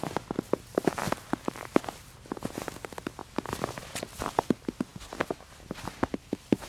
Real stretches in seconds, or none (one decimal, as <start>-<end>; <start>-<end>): 0.0-6.7